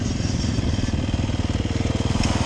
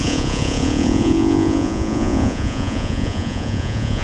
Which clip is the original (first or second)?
first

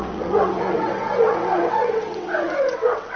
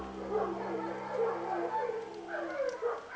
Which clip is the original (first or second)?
second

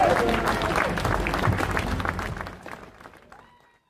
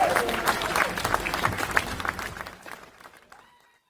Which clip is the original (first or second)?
first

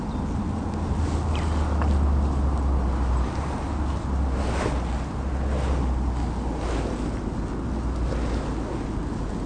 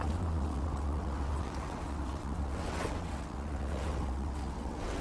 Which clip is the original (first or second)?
first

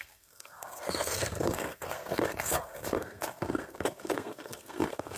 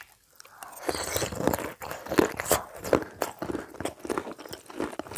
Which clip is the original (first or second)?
second